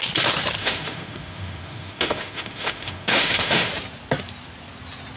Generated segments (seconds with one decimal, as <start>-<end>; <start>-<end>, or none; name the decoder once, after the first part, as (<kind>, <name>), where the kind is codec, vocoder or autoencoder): 0.6-3.7 (autoencoder, DAC-VAE)